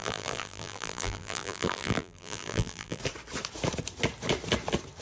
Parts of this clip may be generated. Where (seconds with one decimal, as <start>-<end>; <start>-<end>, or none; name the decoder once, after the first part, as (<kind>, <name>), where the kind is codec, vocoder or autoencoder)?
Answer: 0.0-3.0 (vocoder, BigVGAN v2)